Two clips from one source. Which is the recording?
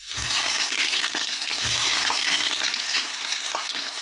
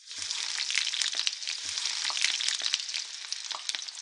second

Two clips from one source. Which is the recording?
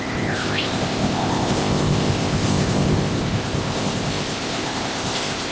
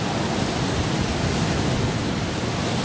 second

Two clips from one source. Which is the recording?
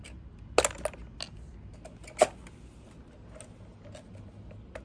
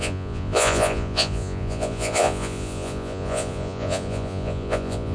first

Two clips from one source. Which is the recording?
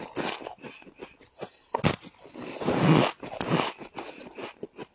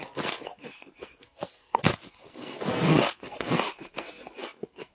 first